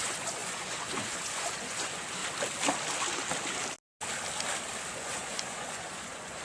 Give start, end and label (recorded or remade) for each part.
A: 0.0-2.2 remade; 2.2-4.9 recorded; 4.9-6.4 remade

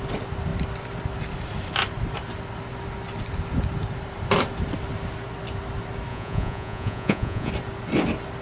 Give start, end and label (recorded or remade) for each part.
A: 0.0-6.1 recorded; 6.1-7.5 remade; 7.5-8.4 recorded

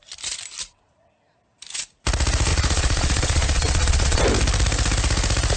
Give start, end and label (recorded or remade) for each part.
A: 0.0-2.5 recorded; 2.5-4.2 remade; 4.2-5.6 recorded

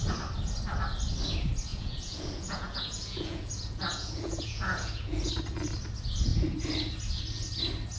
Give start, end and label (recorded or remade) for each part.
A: 0.0-1.7 recorded; 1.7-5.3 remade; 5.3-8.0 recorded